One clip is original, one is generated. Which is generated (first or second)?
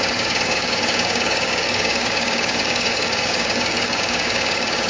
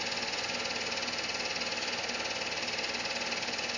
first